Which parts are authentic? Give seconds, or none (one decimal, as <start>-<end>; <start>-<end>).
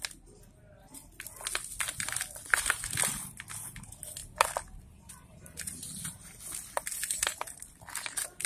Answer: 0.0-8.5